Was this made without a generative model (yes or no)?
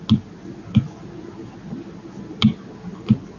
yes